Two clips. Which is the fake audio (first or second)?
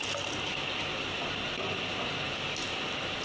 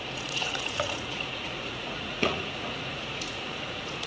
second